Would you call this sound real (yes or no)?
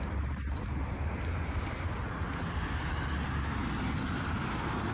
yes